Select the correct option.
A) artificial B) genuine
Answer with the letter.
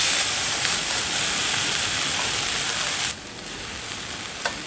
B